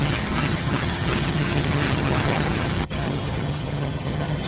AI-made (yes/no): yes